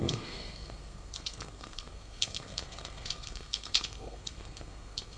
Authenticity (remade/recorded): remade